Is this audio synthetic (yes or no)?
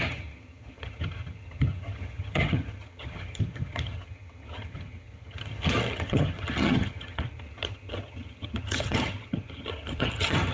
yes